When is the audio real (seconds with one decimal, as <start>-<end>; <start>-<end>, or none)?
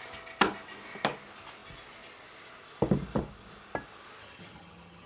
0.0-4.2